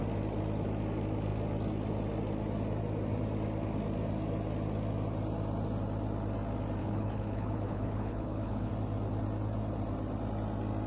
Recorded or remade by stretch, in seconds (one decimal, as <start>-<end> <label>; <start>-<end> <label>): 0.0-6.8 recorded; 6.8-8.7 remade; 8.7-10.9 recorded